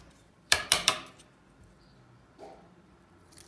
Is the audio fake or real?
fake